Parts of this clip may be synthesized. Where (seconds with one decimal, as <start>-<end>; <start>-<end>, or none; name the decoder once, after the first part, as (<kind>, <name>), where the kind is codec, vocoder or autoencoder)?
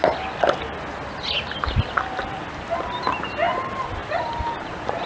4.0-5.1 (vocoder, BigVGAN v2)